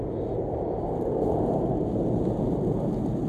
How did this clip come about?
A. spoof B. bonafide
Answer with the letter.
A